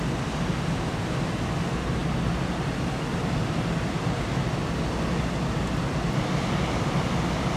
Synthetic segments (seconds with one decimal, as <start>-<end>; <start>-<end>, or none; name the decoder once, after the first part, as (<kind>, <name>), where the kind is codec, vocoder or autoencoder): none